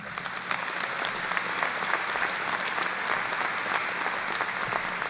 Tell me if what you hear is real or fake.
real